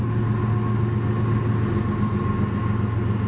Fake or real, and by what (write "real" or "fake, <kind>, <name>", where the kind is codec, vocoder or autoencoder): real